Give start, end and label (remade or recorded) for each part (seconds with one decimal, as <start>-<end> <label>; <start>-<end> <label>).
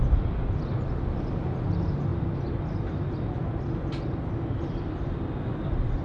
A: 0.0-6.0 recorded